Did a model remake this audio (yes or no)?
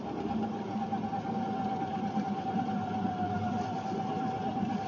no